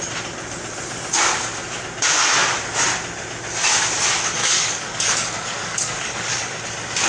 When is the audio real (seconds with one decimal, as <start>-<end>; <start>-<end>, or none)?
0.0-4.4; 6.6-7.1